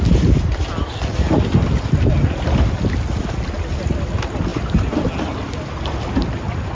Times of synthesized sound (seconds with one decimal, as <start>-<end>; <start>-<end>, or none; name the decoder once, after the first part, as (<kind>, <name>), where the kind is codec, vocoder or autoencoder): none